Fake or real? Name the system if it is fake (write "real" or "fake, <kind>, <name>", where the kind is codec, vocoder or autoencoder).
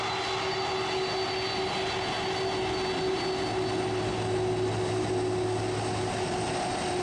real